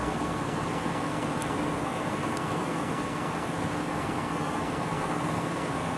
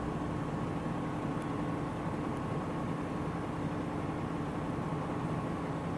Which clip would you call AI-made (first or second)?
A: first